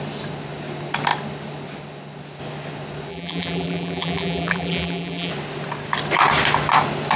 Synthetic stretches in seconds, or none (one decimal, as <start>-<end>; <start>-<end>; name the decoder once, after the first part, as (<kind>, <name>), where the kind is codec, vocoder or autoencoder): 3.1-5.3 (vocoder, BigVGAN v2)